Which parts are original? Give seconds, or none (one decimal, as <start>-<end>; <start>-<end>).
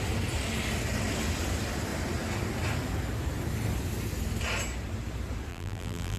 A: 0.0-5.5